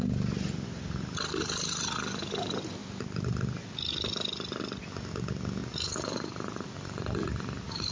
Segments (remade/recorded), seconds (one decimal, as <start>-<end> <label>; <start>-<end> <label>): 0.0-5.6 recorded; 5.6-7.9 remade

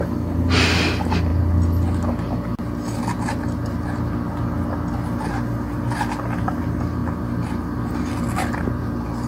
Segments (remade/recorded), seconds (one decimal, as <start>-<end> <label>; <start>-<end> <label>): 0.0-9.3 recorded